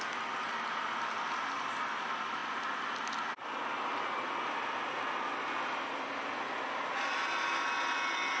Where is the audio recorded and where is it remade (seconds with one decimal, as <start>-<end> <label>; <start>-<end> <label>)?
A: 0.0-8.4 recorded